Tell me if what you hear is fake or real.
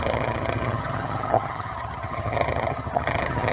fake